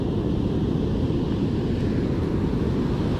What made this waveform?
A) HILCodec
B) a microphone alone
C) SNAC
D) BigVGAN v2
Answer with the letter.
D